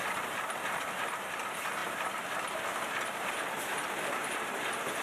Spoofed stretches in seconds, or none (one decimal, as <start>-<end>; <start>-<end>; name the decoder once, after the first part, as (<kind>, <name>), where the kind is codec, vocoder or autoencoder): none